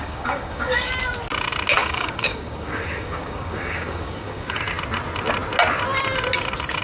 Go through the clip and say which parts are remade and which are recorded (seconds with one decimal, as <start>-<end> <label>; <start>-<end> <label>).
0.0-0.9 remade; 0.9-1.8 recorded; 1.8-4.6 remade; 4.6-6.8 recorded